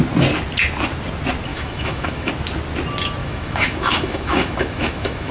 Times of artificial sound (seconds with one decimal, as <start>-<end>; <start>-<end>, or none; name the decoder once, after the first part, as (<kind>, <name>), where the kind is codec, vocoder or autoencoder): 1.5-2.3 (autoencoder, DAC-VAE); 3.2-5.3